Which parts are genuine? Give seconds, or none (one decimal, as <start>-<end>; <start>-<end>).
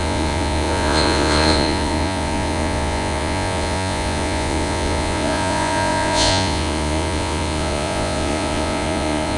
none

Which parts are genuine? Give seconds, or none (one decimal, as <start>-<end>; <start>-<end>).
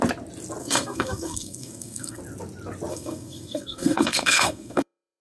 0.0-0.6; 2.2-2.9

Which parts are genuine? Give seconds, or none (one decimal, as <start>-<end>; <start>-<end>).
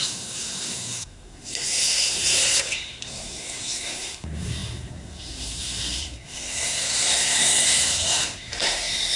none